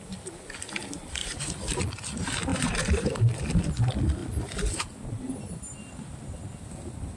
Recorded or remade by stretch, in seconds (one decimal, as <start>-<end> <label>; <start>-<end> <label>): 0.0-1.2 recorded; 1.2-1.8 remade; 1.8-2.5 recorded; 2.5-3.4 remade; 3.4-7.2 recorded